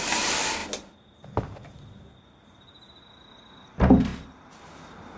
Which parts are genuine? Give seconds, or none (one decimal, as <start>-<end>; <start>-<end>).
0.0-5.2